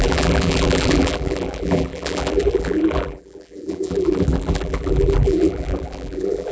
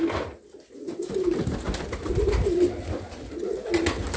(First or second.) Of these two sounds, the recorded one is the second